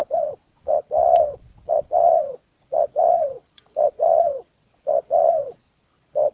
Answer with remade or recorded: remade